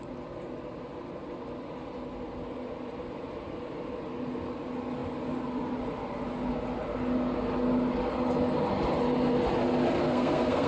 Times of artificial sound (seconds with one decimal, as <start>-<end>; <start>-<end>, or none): 10.0-10.7